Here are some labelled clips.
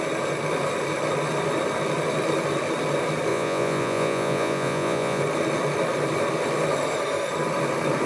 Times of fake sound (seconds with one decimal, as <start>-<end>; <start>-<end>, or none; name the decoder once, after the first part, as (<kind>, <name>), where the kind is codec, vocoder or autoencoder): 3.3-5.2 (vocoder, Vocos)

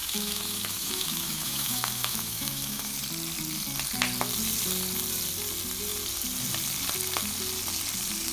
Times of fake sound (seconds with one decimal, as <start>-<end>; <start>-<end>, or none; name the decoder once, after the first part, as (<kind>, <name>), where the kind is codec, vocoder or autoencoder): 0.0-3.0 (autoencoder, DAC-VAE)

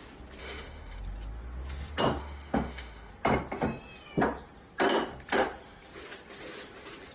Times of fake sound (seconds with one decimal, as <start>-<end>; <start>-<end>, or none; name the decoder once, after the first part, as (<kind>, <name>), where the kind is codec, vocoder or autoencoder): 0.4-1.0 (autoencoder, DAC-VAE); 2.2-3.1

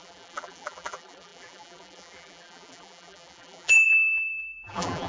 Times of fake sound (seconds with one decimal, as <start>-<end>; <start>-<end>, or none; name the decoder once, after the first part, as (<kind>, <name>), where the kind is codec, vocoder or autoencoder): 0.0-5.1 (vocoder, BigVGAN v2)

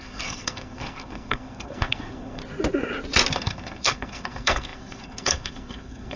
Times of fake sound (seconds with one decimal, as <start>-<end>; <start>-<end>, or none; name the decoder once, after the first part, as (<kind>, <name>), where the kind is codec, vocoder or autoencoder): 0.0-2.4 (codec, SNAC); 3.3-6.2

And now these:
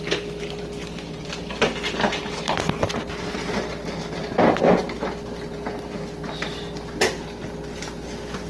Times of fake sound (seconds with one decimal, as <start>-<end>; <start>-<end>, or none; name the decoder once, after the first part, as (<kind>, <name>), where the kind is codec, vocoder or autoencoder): none